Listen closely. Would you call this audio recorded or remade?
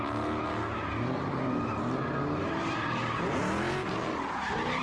recorded